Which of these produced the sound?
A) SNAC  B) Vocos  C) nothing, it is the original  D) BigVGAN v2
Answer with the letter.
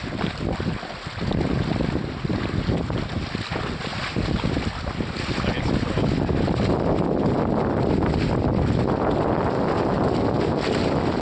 C